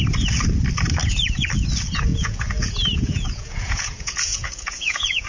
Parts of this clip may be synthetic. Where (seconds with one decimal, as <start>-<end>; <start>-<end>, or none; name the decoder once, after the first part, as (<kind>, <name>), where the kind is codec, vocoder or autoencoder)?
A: 1.0-1.5 (vocoder, Vocos); 2.1-5.3